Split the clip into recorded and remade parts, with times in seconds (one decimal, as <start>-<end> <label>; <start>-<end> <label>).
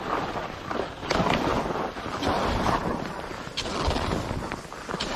0.0-5.2 recorded